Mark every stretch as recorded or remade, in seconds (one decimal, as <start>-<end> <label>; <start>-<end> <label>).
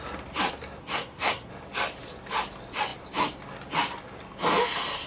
0.0-0.8 recorded; 0.8-1.5 remade; 1.5-5.1 recorded